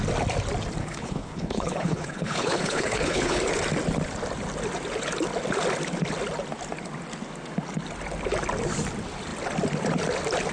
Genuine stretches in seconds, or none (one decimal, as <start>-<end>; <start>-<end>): 0.0-0.8; 3.4-10.5